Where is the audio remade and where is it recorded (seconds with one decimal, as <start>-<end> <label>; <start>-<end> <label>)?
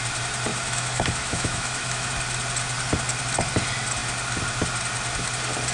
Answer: 0.0-0.5 recorded; 0.5-2.1 remade; 2.1-5.7 recorded